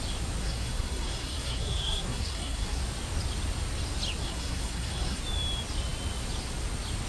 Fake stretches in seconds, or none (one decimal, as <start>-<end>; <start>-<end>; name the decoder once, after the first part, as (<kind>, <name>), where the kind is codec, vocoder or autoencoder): 0.4-2.8 (codec, SNAC); 4.2-5.2